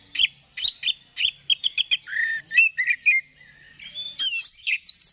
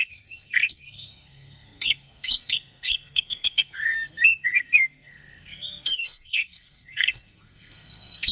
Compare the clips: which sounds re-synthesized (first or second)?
second